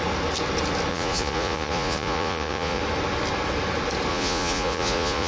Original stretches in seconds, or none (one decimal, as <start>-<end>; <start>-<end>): 0.0-0.9; 2.8-4.1